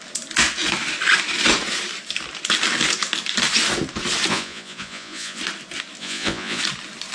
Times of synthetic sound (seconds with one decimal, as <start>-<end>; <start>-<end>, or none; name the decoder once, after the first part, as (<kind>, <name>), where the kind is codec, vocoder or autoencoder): 4.3-5.4 (vocoder, Vocos); 6.0-6.6